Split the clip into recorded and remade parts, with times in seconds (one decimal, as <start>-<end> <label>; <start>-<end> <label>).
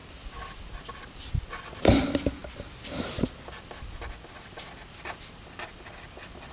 0.0-6.5 recorded